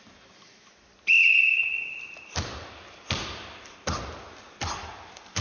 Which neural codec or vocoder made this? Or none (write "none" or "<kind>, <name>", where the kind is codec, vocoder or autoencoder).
vocoder, BigVGAN v2